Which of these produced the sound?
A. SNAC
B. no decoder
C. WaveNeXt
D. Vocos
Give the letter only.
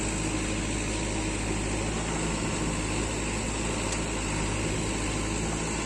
B